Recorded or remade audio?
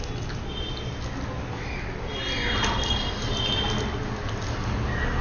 recorded